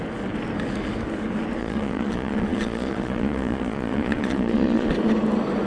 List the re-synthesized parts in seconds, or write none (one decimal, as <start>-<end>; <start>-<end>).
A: 1.6-4.9